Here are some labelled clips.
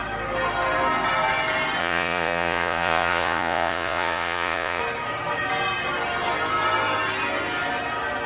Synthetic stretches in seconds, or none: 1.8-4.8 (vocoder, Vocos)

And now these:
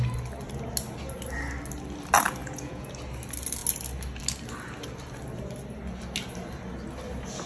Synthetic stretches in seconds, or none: 2.4-2.9 (vocoder, Vocos)

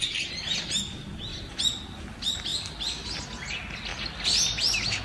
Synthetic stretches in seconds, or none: 1.3-2.0 (vocoder, Vocos)

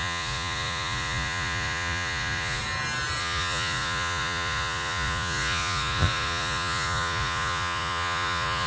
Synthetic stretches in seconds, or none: 0.0-2.6 (vocoder, Vocos); 3.2-8.7

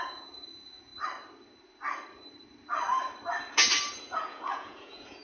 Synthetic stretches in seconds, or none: 0.0-0.9 (vocoder, Vocos); 4.0-5.2

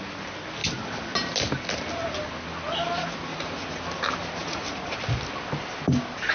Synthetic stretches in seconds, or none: 3.3-3.8 (vocoder, Vocos); 4.4-5.0

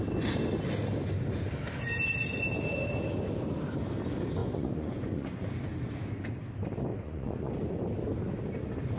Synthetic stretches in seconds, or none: 4.4-5.5 (vocoder, Vocos); 6.9-7.5